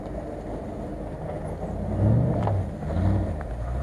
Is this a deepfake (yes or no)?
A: no